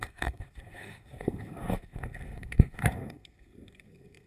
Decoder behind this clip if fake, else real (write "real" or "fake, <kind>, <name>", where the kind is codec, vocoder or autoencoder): fake, codec, SNAC